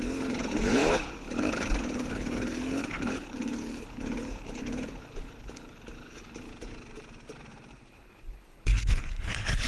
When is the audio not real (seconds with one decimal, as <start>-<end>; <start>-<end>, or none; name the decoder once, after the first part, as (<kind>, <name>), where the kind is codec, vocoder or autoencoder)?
0.0-6.5 (codec, HILCodec); 7.9-9.7